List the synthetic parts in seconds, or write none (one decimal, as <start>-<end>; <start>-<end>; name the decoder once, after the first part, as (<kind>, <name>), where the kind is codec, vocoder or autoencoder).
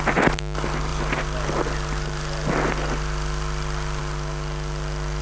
none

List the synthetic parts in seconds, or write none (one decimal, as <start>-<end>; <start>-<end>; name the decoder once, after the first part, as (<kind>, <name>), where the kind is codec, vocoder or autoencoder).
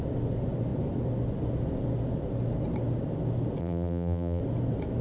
3.6-4.4 (vocoder, BigVGAN v2)